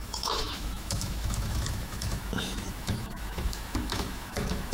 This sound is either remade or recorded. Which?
remade